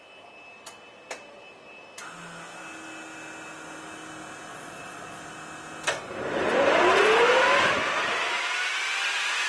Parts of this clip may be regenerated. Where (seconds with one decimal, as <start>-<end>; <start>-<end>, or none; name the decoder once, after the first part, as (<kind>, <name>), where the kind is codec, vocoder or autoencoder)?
4.5-5.2 (vocoder, Vocos)